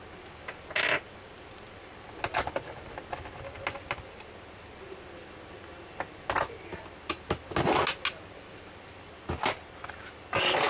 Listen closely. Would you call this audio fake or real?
real